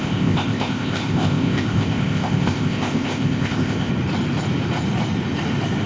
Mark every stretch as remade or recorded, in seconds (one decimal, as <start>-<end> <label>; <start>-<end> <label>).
0.0-3.9 remade; 3.9-5.9 recorded